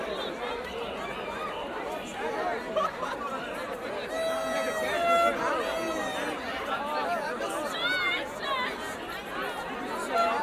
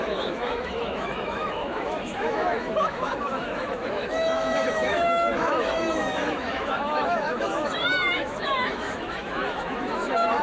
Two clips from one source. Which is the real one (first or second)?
first